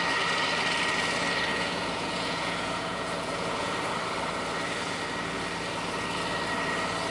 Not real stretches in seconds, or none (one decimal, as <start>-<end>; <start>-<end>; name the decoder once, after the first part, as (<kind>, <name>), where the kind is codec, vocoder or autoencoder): 1.5-3.7 (vocoder, Vocos)